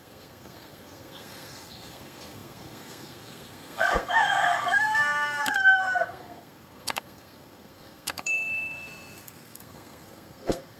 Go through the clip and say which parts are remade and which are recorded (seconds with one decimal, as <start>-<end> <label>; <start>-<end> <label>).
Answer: 0.0-10.8 remade